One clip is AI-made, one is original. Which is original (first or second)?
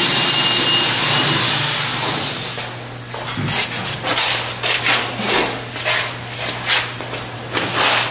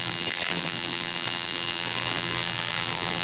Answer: first